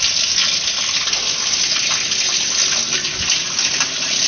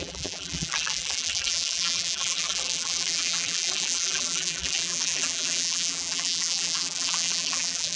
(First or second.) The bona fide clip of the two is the first